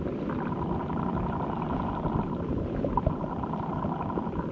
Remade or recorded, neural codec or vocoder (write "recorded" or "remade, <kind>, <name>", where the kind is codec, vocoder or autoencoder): recorded